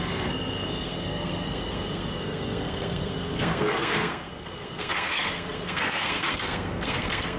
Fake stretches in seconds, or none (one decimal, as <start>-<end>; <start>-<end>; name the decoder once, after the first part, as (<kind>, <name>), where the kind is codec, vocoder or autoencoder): 0.0-7.4 (codec, SNAC)